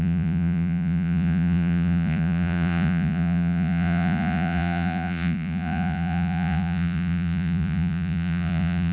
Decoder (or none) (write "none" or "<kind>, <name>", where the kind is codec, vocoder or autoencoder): vocoder, Vocos